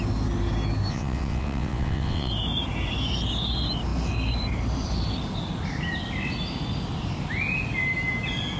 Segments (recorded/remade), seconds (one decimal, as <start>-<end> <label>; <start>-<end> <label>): 0.0-0.9 recorded; 0.9-2.3 remade; 2.3-8.6 recorded